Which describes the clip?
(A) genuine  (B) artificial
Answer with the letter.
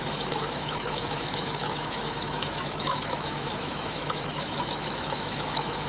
B